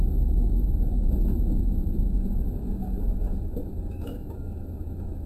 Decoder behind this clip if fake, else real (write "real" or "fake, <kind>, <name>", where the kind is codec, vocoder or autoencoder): fake, autoencoder, DAC-VAE